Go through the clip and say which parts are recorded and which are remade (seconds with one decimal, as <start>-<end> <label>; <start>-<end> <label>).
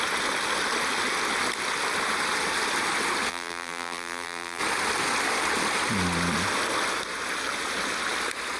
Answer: 0.0-3.3 recorded; 3.3-4.6 remade; 4.6-8.6 recorded